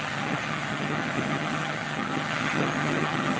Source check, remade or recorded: remade